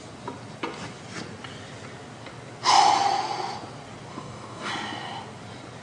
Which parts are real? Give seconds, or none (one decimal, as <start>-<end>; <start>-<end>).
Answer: 0.0-4.1; 4.7-5.8